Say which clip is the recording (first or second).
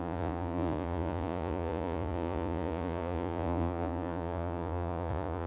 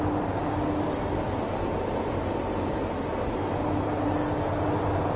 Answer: second